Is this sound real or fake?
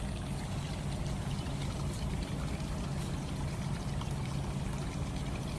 real